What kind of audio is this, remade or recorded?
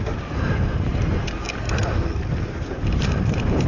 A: recorded